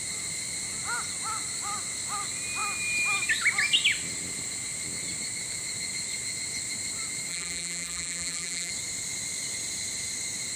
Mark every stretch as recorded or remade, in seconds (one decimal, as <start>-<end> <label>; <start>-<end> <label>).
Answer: 0.0-7.3 recorded; 7.3-8.7 remade; 8.7-10.6 recorded